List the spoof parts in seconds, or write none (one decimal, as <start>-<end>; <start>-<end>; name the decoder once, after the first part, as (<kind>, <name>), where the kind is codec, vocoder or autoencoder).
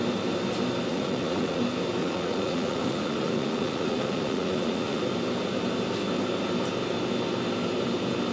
0.9-1.6 (vocoder, Vocos); 2.0-5.0